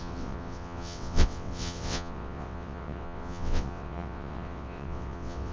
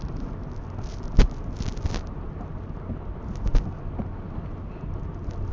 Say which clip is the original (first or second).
second